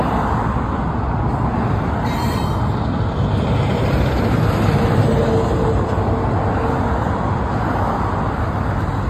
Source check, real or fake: real